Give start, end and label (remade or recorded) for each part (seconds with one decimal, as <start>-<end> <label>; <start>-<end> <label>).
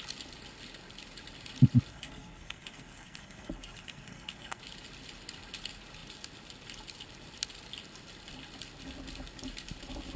0.0-1.9 recorded; 1.9-4.6 remade; 4.6-10.2 recorded